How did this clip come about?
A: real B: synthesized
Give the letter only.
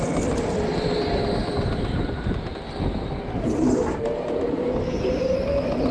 A